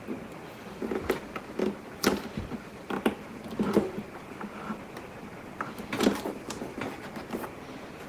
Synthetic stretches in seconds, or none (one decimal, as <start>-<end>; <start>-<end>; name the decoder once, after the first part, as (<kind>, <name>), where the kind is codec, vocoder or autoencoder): none